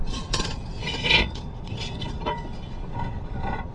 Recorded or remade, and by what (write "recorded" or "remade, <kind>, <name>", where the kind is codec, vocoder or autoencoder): remade, vocoder, Vocos